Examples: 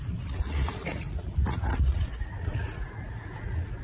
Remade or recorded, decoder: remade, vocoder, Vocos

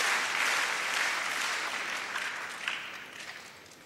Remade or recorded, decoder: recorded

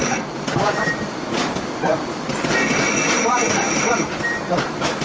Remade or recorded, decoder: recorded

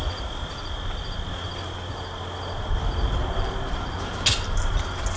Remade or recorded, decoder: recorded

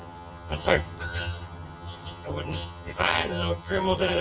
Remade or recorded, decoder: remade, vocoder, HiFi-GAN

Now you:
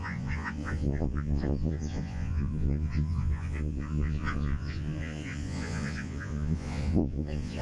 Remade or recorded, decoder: remade, vocoder, Vocos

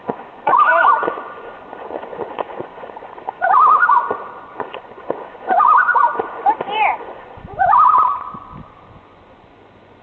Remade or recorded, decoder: remade, vocoder, Vocos